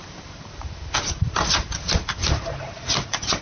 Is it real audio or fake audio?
fake